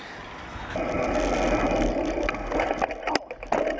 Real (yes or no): yes